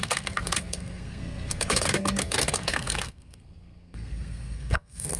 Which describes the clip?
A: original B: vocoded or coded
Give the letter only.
B